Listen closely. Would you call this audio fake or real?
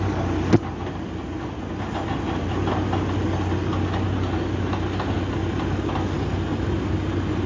real